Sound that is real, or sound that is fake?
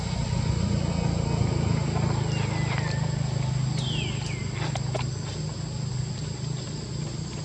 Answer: real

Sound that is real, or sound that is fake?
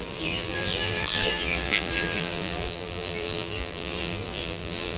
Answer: fake